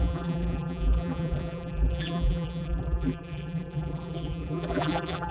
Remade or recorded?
remade